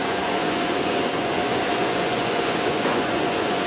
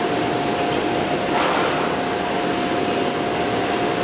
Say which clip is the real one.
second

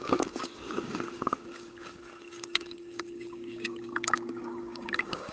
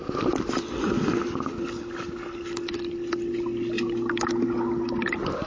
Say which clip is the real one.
second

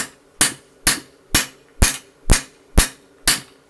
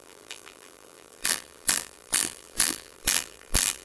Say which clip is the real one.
first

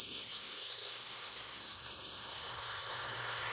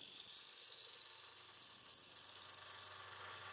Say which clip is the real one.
second